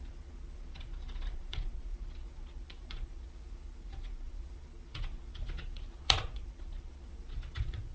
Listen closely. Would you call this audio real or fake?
fake